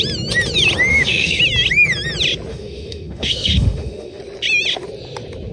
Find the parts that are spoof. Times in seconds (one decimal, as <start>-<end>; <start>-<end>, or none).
0.9-1.4; 2.5-4.2